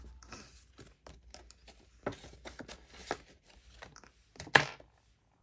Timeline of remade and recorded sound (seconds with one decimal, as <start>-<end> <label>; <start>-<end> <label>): 0.0-5.4 recorded

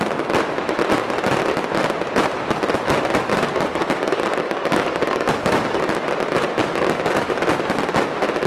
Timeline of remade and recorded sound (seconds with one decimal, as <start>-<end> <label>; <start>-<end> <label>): 0.0-3.7 recorded; 3.7-5.8 remade; 5.8-6.6 recorded; 6.6-7.3 remade; 7.3-8.5 recorded

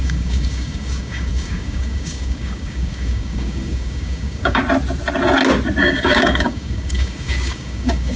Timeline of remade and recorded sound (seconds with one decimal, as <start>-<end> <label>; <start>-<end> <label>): 0.0-4.6 remade; 4.6-5.8 recorded; 5.8-8.2 remade

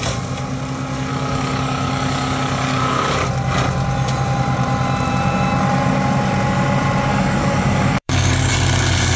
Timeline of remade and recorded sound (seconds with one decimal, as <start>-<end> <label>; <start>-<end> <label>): 0.0-1.1 recorded; 1.1-3.3 remade; 3.3-7.1 recorded; 7.1-8.5 remade; 8.5-9.2 recorded

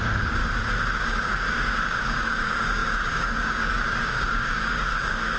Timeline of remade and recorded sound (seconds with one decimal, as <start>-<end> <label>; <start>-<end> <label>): 0.0-0.4 remade; 0.4-1.0 recorded; 1.0-5.4 remade